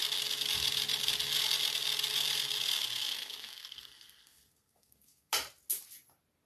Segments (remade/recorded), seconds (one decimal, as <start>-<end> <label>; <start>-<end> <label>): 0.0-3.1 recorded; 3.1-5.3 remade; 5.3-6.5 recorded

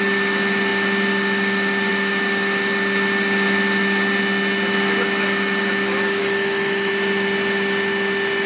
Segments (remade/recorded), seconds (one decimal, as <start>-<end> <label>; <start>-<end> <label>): 0.0-6.2 recorded; 6.2-6.9 remade; 6.9-8.5 recorded

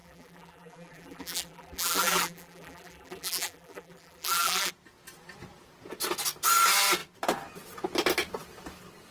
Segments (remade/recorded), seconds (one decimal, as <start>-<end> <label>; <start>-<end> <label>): 0.0-4.7 remade; 4.7-9.1 recorded